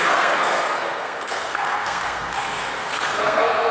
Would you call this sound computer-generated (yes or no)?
yes